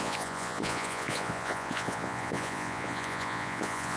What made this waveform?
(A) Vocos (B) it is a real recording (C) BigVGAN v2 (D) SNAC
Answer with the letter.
A